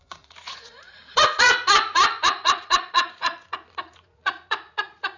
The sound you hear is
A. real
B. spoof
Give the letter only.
B